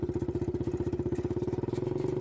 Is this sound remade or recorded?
recorded